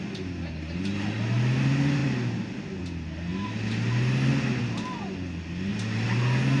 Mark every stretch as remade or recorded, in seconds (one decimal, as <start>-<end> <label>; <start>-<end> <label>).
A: 0.0-6.6 recorded